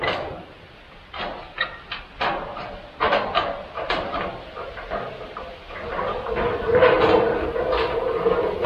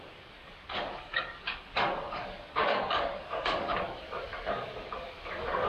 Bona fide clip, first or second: first